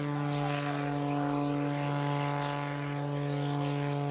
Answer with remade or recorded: recorded